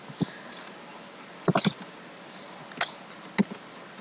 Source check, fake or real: real